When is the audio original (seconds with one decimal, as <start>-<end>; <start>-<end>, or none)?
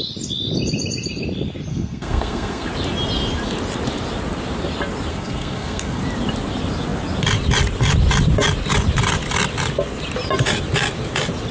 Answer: 0.0-1.7; 2.7-5.1; 6.0-11.5